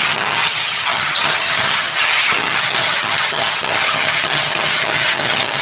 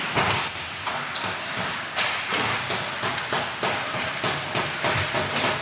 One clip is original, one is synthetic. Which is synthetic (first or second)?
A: first